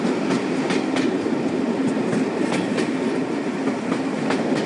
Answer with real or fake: real